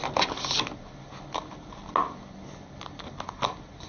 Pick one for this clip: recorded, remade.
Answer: recorded